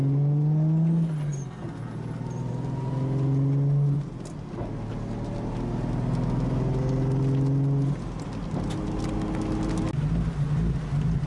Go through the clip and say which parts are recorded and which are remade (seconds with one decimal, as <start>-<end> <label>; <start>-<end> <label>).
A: 0.0-11.3 recorded